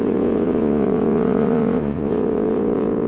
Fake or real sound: fake